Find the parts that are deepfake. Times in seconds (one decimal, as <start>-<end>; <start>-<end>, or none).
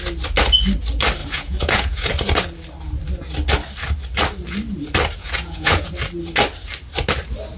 1.2-2.1; 5.2-5.9